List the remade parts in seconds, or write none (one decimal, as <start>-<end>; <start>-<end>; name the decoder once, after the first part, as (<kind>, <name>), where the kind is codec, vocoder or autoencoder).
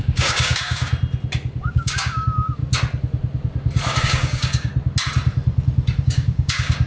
0.0-0.9 (codec, DAC); 1.6-2.6; 4.0-4.7; 6.0-6.9